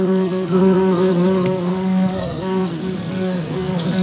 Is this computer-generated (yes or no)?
yes